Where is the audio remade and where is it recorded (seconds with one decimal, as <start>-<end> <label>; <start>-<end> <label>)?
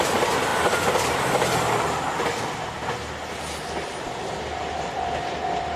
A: 0.0-5.8 recorded